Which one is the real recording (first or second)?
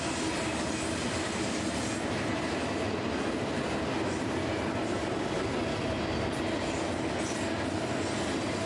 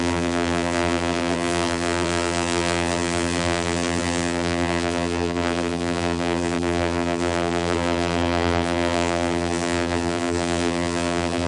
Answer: first